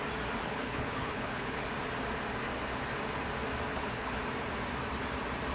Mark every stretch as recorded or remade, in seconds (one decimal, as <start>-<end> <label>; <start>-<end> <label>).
0.0-0.4 recorded; 0.4-1.7 remade; 1.7-3.7 recorded; 3.7-4.2 remade; 4.2-5.5 recorded